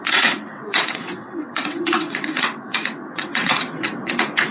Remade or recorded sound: remade